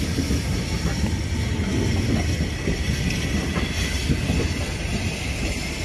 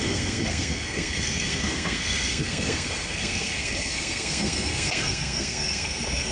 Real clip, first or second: first